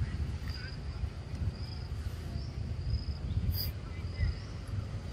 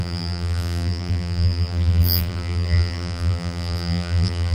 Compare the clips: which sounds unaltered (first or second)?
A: first